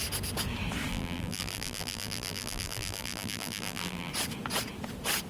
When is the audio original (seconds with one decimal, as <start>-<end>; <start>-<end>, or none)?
0.0-0.9; 4.1-5.3